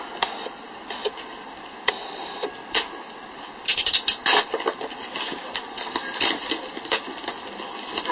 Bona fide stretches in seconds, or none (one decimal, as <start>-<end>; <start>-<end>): 0.0-8.1